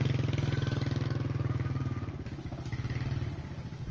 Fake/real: real